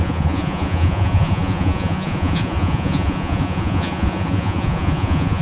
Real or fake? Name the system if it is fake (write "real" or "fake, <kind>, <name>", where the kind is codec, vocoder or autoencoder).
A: fake, vocoder, Vocos